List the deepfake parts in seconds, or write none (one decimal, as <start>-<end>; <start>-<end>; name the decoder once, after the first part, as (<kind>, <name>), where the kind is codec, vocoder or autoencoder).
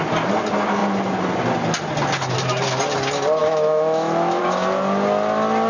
3.4-4.4 (autoencoder, DAC-VAE)